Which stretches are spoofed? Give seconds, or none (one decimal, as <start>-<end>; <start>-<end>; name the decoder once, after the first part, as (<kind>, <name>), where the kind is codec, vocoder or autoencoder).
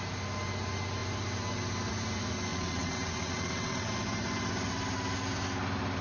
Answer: 2.5-3.9 (vocoder, WaveNeXt)